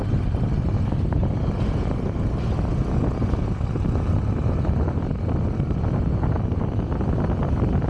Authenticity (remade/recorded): recorded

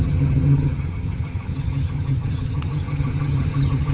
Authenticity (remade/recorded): remade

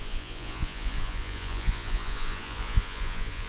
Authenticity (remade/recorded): remade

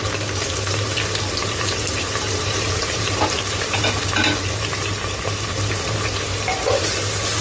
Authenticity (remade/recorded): remade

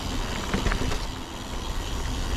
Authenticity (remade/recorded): recorded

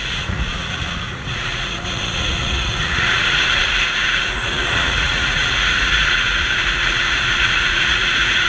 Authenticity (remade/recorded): remade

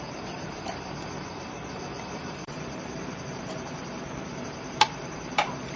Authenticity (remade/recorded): remade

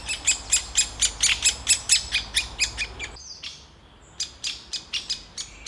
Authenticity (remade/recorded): recorded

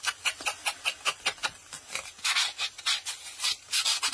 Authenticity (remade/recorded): recorded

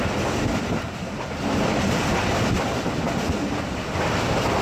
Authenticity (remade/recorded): recorded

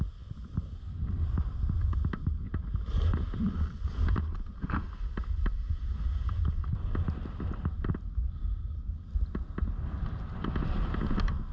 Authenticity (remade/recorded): recorded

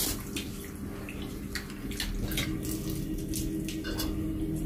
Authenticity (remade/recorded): recorded